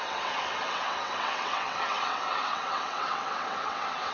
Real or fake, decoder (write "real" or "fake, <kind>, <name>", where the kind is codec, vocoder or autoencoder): fake, vocoder, WaveNeXt